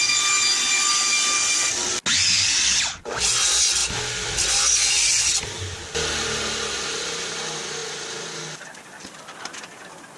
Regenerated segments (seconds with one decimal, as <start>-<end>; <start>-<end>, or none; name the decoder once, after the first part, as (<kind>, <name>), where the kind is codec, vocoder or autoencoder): 3.8-4.9 (vocoder, BigVGAN v2)